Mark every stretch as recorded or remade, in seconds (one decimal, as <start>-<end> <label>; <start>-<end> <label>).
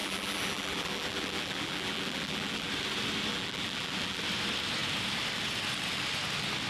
0.0-2.7 remade; 2.7-3.3 recorded; 3.3-4.2 remade; 4.2-6.7 recorded